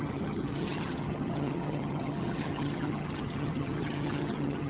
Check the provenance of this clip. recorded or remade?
remade